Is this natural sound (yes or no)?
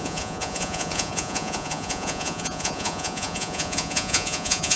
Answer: no